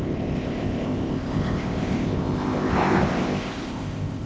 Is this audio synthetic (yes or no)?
yes